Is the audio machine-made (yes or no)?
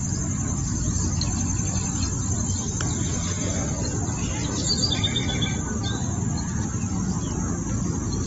no